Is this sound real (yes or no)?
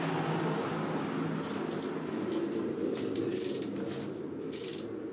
yes